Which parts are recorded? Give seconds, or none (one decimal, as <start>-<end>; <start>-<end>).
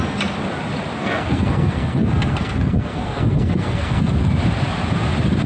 0.0-1.0; 4.3-5.5